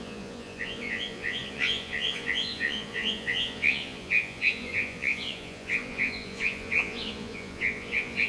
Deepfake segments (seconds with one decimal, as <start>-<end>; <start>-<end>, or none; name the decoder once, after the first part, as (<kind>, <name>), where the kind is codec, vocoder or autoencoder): 0.0-8.3 (vocoder, Vocos)